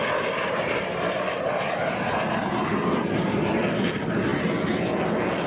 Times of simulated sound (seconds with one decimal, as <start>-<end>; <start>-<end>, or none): none